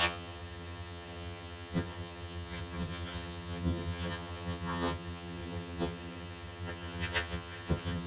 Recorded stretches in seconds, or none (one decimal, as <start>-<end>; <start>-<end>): none